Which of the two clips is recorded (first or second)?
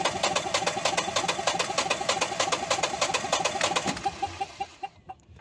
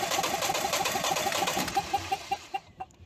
first